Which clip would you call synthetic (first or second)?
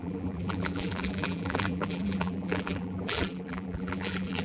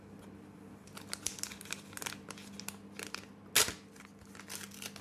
first